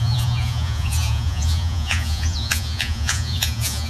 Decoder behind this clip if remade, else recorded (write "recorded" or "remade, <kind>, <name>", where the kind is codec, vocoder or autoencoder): remade, vocoder, Vocos